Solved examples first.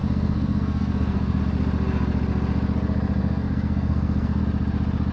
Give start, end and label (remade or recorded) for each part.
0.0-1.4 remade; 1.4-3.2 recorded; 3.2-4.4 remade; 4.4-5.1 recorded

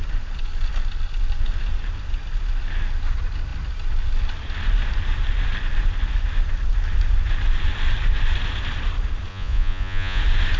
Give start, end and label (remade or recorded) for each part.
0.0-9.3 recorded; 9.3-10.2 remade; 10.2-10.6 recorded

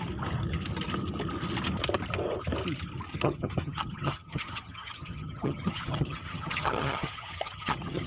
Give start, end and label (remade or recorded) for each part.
0.0-3.1 recorded; 3.1-8.1 remade

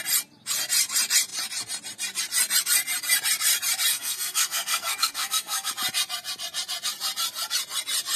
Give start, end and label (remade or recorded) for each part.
0.0-3.9 recorded; 3.9-5.7 remade; 5.7-8.2 recorded

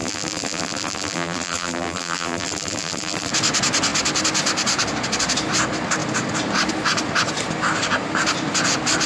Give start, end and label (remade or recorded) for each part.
0.0-3.3 remade; 3.3-9.1 recorded

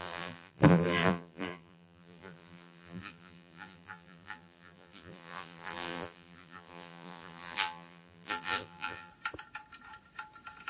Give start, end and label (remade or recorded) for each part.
0.0-9.1 remade; 9.1-10.7 recorded

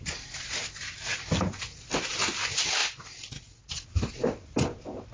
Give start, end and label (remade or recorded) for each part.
0.0-5.1 recorded

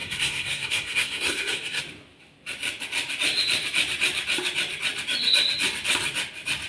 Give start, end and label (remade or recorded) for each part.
0.0-1.8 remade; 1.8-6.7 recorded